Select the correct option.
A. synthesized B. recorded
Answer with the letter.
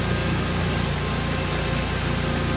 B